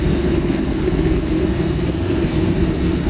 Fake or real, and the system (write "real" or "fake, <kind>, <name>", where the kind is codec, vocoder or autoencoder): fake, codec, SNAC